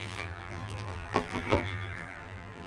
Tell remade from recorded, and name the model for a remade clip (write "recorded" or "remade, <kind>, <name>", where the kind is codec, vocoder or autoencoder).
remade, vocoder, BigVGAN v2